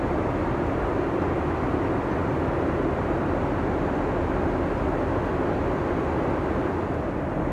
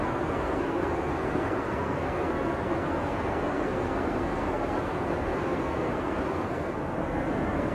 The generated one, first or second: second